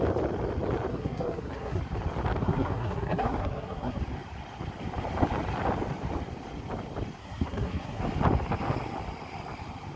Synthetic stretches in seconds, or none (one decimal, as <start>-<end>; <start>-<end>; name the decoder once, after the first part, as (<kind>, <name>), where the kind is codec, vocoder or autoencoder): 0.9-1.8 (codec, SNAC); 2.4-4.0; 7.2-8.0

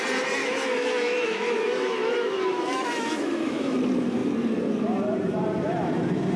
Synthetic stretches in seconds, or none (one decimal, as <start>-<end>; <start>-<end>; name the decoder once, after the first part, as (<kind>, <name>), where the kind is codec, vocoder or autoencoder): 0.4-3.8 (autoencoder, DAC-VAE)